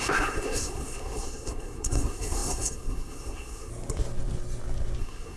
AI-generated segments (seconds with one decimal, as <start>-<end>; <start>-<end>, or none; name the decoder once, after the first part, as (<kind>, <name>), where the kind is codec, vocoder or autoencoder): 0.0-3.7 (codec, SNAC); 5.0-5.4